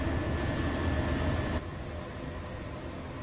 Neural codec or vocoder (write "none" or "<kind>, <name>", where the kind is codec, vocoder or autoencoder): none